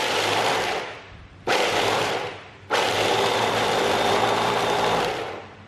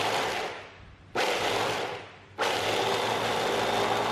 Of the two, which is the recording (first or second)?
second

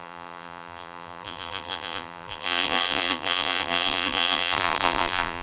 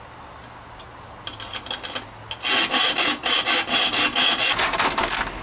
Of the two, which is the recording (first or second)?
second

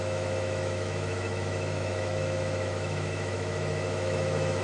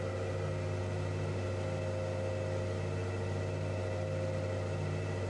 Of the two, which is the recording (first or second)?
second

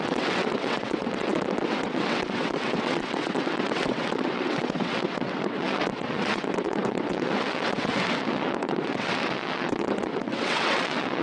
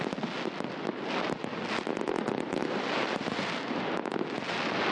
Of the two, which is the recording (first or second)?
second